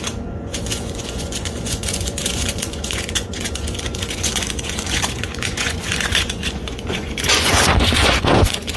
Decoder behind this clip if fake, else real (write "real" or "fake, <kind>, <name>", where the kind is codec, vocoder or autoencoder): fake, vocoder, Vocos